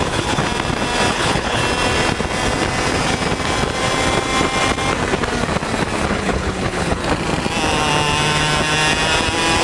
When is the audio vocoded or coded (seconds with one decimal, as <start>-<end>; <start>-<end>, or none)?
0.0-0.4; 1.1-1.6; 6.1-7.0